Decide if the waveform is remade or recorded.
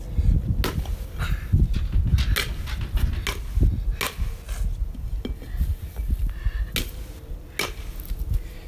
recorded